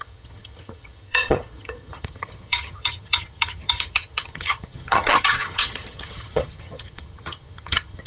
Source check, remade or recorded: remade